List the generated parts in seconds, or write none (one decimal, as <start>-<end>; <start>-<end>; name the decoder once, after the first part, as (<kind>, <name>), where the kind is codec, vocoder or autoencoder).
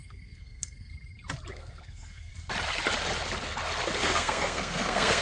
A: 0.0-0.9 (codec, SNAC); 1.5-2.3; 4.0-5.2